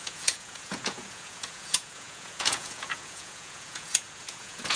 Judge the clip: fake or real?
fake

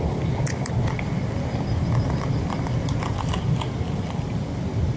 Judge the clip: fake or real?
real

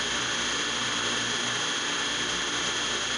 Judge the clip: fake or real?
real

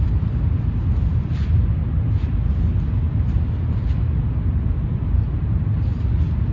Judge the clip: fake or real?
real